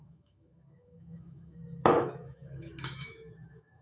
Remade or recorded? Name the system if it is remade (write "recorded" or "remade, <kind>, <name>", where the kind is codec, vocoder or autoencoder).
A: remade, autoencoder, DAC-VAE